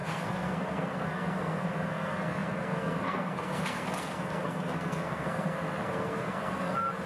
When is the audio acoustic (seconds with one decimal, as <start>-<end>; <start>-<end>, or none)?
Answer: none